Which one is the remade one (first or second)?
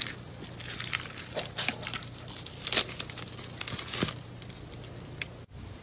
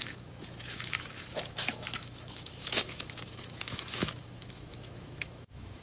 second